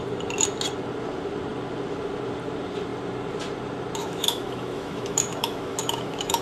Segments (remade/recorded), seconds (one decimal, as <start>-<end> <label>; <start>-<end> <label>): 0.0-4.0 recorded; 4.0-6.4 remade